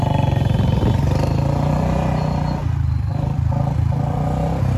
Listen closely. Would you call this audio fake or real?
real